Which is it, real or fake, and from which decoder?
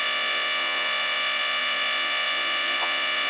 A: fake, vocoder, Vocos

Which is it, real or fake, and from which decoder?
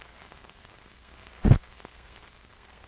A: fake, codec, SNAC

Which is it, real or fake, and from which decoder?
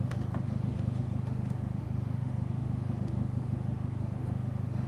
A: fake, autoencoder, DAC-VAE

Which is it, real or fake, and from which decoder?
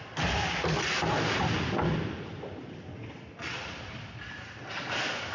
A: real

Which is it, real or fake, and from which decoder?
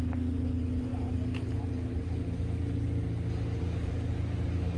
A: real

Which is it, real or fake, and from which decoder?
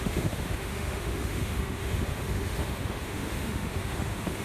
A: fake, autoencoder, DAC-VAE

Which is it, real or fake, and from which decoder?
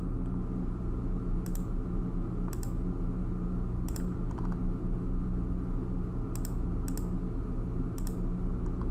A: real